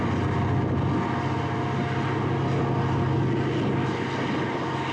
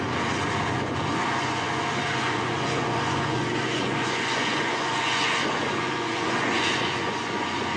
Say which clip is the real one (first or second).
first